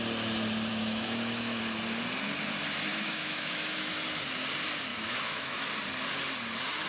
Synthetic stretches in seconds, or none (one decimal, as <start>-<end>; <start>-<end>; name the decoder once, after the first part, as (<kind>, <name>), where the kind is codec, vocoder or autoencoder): 0.7-1.6 (autoencoder, DAC-VAE); 2.9-3.9; 4.9-5.7